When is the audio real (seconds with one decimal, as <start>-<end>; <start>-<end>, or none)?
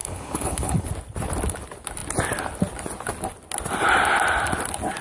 0.9-5.0